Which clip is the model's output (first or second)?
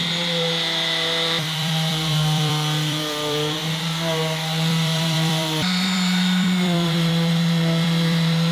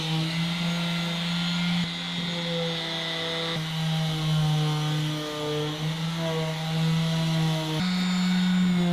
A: first